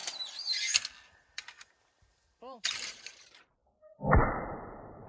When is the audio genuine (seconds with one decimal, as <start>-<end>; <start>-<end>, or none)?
0.0-1.8; 3.6-4.4